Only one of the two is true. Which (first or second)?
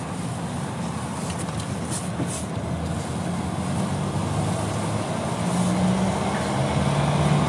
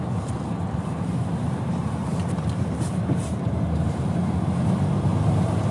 first